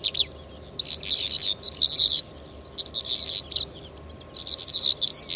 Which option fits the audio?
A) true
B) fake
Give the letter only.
A